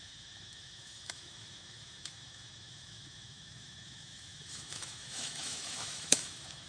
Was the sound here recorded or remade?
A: remade